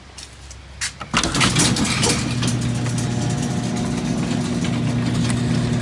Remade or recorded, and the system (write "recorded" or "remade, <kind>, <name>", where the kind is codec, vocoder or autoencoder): recorded